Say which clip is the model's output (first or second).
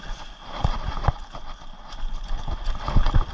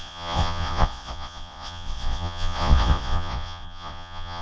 second